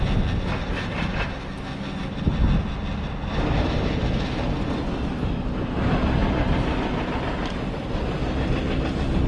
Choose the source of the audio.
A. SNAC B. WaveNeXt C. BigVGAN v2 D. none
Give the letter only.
D